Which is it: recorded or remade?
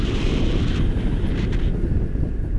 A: recorded